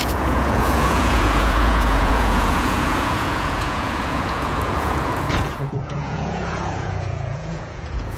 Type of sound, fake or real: fake